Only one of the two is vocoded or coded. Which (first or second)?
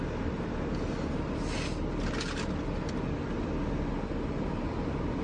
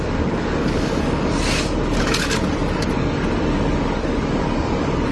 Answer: second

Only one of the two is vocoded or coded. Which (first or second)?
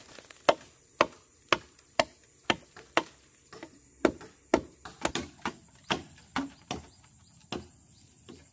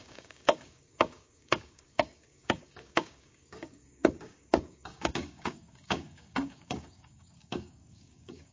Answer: second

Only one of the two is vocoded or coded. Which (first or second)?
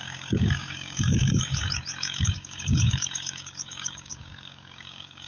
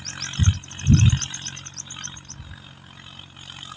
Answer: first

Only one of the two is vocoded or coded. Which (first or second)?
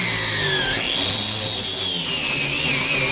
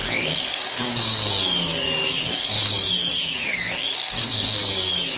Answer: second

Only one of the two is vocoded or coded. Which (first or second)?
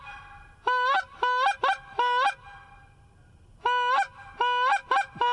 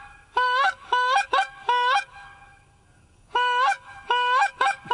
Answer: second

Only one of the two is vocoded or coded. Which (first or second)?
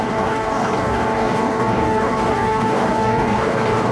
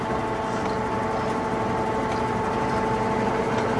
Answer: first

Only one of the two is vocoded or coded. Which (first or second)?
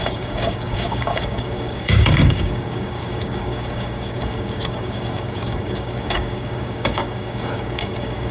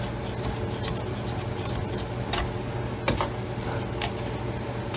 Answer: first